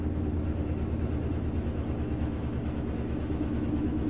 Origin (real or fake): fake